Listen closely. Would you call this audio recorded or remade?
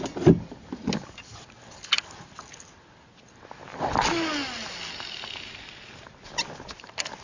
recorded